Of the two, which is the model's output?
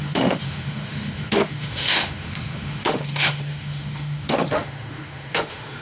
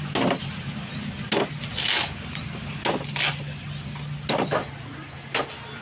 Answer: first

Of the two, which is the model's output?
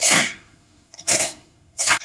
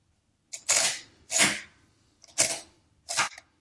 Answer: first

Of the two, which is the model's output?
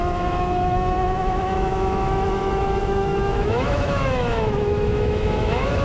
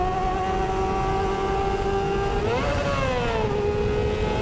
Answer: first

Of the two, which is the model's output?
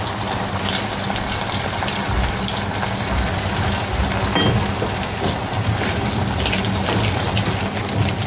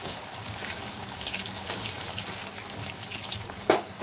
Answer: second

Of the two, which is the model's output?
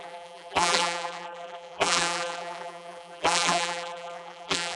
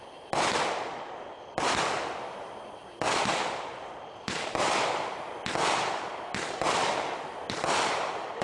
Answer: first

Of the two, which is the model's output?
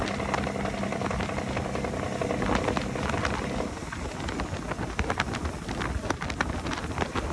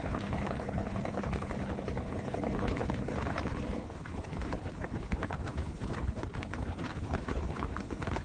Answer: second